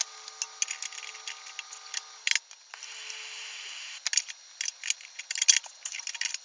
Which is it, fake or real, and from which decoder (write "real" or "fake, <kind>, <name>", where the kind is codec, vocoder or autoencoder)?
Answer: real